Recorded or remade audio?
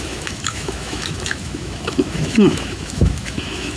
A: remade